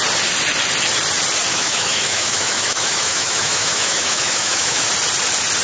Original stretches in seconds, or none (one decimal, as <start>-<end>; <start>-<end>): 0.0-1.5; 4.9-5.6